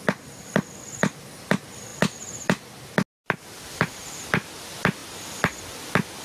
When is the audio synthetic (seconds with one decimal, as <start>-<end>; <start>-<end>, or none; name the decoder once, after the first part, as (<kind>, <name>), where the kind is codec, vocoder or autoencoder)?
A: none